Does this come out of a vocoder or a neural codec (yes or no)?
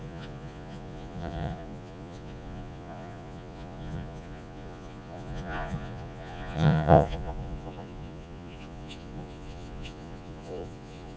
yes